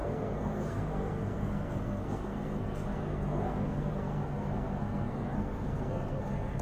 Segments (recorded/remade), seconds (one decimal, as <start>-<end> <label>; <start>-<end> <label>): 0.0-6.6 remade